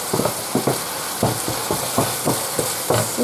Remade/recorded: recorded